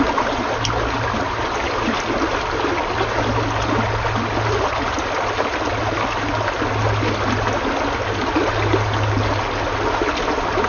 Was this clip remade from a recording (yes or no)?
no